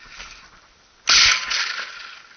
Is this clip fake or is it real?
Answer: real